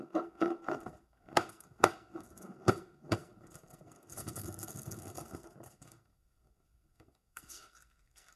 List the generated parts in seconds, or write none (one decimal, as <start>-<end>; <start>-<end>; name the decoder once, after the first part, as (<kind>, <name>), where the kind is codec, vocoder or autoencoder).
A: 0.0-8.4 (codec, SNAC)